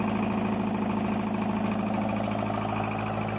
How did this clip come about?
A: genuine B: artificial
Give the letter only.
A